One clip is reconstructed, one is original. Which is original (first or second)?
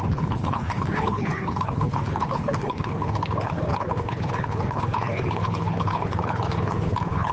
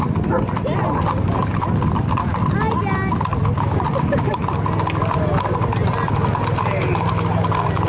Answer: second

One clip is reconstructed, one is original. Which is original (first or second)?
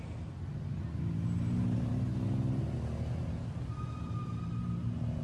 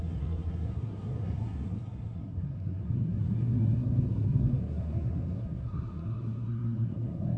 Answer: first